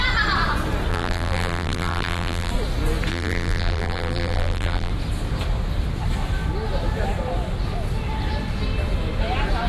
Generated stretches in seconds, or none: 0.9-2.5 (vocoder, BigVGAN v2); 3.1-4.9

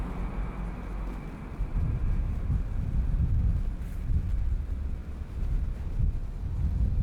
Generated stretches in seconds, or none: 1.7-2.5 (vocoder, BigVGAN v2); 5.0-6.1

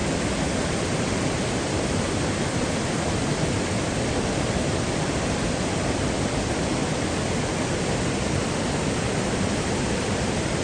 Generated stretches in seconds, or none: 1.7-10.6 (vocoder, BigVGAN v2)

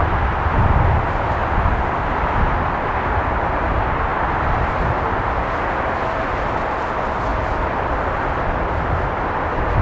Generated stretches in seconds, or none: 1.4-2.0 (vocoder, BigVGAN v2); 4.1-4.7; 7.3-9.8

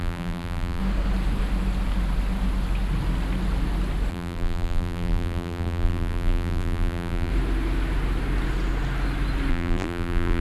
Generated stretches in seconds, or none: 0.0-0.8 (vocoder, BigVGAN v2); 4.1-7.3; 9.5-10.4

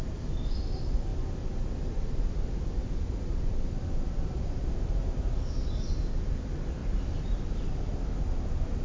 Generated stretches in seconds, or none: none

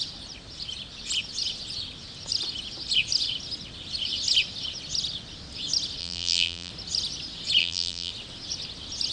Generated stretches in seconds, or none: 6.0-6.7 (vocoder, BigVGAN v2); 7.6-8.1

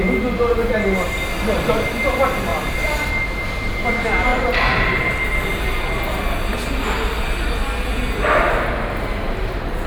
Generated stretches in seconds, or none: 2.5-3.1 (vocoder, BigVGAN v2)